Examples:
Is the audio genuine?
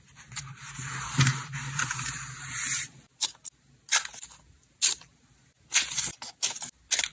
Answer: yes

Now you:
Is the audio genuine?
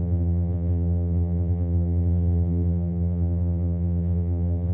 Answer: no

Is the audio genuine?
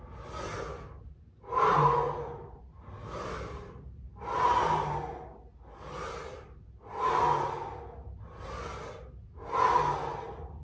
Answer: yes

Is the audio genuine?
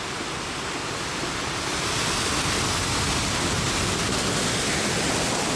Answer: yes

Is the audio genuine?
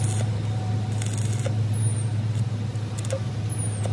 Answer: yes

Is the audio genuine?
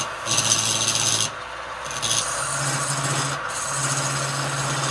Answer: yes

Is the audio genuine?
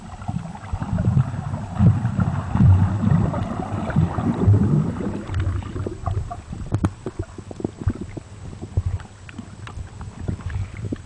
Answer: yes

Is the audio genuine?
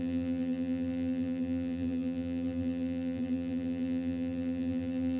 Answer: no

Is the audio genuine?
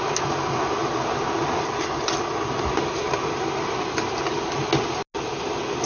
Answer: yes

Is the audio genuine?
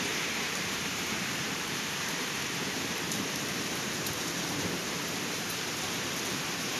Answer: no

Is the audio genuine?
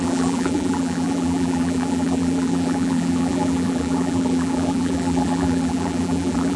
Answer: no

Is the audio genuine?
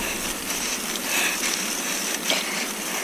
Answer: no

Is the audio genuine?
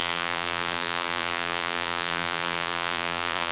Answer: no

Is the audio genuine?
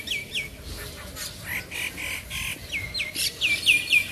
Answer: yes